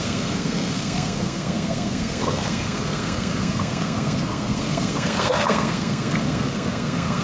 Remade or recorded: remade